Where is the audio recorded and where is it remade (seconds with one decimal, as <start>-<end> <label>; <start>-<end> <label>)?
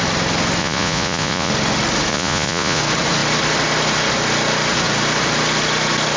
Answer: 0.0-0.6 recorded; 0.6-1.5 remade; 1.5-2.1 recorded; 2.1-2.8 remade; 2.8-6.2 recorded